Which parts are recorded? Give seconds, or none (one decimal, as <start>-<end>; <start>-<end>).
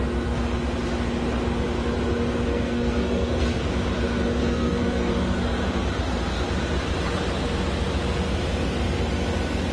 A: 0.0-2.5; 3.7-4.4; 5.1-9.7